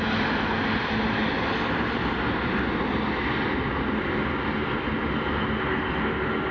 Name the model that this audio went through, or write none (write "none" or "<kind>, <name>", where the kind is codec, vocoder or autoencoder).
none